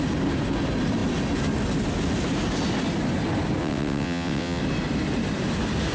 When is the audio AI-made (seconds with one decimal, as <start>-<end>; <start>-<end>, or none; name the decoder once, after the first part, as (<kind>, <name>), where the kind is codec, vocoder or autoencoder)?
3.6-4.6 (vocoder, WaveNeXt)